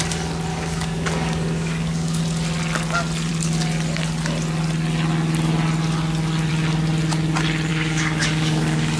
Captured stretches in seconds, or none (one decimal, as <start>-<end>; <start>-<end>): 0.0-0.5; 2.2-7.7

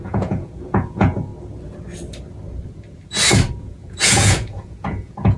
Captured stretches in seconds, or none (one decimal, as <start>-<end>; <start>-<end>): 1.3-3.6

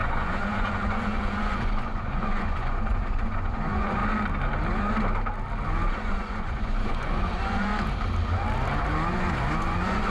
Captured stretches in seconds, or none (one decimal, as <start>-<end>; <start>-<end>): 4.0-5.9; 7.7-9.1

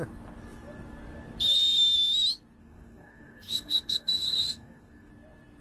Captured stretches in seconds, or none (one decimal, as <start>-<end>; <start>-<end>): 0.0-2.6; 5.1-5.6

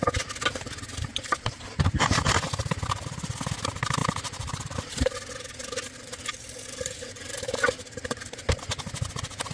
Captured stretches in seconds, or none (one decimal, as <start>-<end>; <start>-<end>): 0.0-1.1; 1.6-4.0; 8.2-9.5